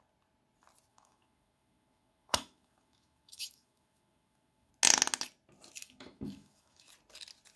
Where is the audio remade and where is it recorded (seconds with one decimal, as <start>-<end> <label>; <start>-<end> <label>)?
0.0-0.9 recorded; 0.9-4.7 remade; 4.7-5.8 recorded; 5.8-6.9 remade; 6.9-7.6 recorded